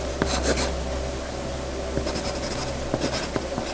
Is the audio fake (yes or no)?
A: no